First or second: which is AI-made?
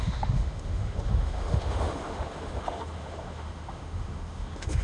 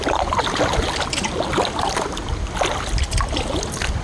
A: first